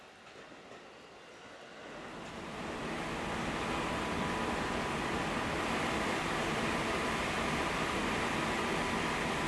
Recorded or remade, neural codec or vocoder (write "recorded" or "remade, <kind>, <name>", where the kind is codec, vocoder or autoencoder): recorded